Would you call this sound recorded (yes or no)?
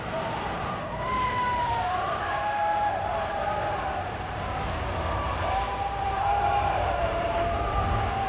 no